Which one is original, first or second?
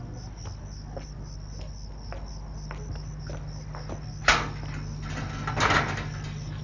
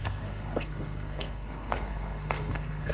first